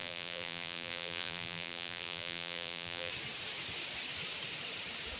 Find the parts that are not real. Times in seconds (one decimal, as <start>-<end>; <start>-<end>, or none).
0.0-3.1